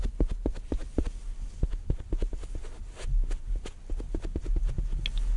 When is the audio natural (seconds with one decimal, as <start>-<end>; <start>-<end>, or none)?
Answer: 0.0-5.4